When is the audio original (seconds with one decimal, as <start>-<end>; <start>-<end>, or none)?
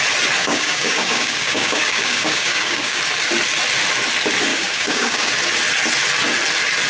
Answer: 0.0-0.4; 3.0-4.5; 5.3-6.9